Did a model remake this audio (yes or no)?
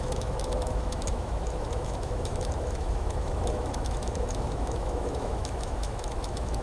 yes